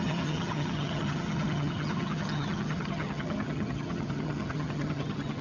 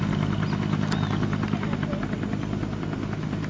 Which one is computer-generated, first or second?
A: first